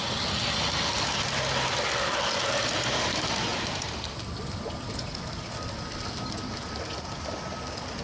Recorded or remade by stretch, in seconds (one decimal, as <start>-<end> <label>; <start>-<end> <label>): 0.0-8.0 recorded